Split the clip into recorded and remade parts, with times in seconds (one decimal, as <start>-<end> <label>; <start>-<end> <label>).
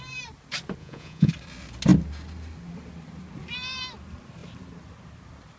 0.0-0.8 recorded; 0.8-1.3 remade; 1.3-5.6 recorded